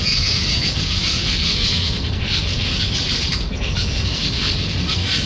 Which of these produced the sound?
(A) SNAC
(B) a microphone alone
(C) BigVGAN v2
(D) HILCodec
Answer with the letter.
A